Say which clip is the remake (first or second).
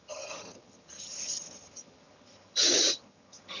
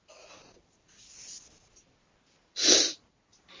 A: first